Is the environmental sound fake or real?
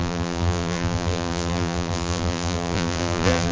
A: fake